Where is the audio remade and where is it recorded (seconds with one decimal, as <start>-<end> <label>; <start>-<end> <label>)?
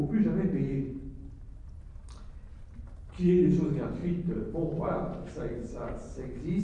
0.0-6.6 recorded